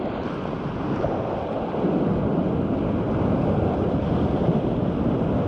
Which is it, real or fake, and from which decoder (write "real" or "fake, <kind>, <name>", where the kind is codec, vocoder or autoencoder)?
real